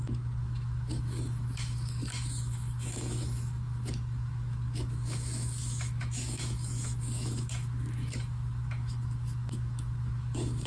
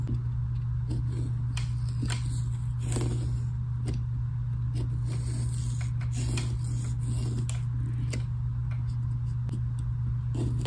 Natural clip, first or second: second